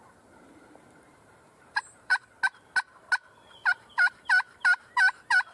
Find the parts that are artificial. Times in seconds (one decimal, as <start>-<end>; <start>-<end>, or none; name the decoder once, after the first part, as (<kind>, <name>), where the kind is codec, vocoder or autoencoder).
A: 0.0-2.1 (vocoder, BigVGAN v2); 3.7-5.5